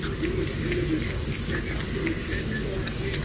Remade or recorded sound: recorded